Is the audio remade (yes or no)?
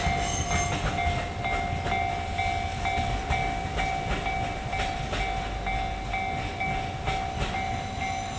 no